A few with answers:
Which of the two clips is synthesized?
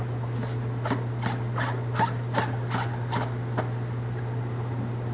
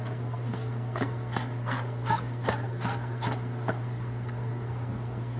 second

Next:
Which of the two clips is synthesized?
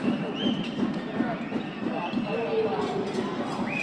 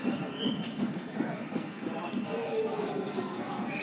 second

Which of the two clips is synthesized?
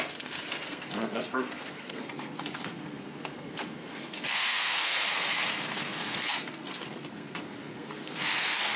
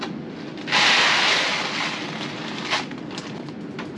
first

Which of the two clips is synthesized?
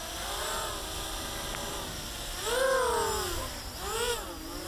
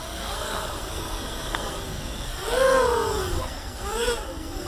second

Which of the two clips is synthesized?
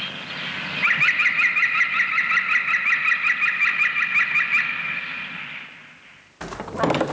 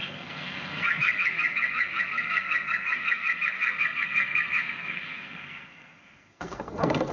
second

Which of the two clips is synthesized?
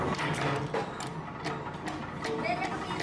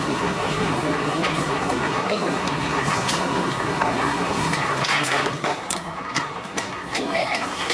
second